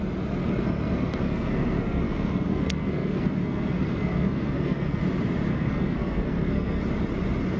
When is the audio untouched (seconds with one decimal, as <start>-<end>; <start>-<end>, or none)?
0.0-0.4; 5.0-5.5; 6.8-7.6